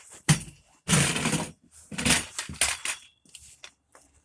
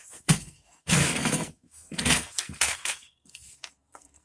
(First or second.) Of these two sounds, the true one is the first